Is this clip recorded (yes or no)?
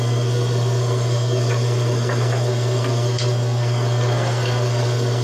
no